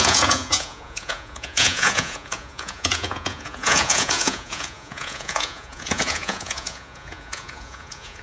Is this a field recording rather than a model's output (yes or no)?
no